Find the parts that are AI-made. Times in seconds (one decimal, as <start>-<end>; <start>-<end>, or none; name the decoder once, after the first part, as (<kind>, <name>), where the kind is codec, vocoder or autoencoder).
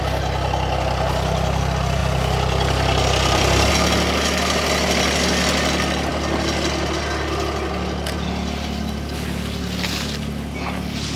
2.0-3.7 (vocoder, BigVGAN v2)